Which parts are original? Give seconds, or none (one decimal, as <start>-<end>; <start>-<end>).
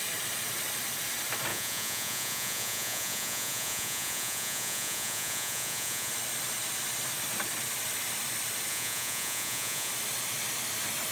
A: 0.0-1.5; 6.1-8.7; 9.9-11.1